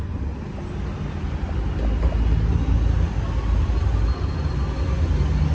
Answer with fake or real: real